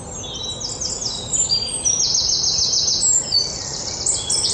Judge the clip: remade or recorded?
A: recorded